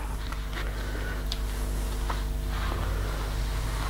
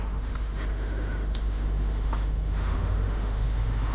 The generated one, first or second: second